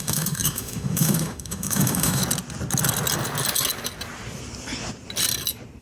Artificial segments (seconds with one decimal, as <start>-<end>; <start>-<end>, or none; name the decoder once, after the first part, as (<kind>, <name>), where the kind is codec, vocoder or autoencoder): 0.0-2.2 (autoencoder, DAC-VAE)